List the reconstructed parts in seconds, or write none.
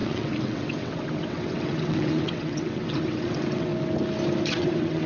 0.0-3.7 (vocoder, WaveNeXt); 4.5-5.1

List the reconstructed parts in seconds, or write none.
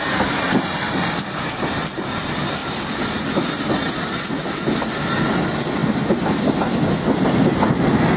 none